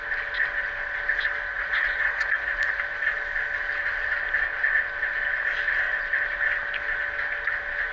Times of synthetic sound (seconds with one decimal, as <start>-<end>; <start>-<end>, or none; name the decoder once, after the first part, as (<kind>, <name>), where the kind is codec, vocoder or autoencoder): 1.5-2.8 (vocoder, Vocos)